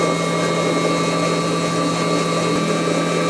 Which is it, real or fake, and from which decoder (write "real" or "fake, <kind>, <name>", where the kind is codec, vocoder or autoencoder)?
real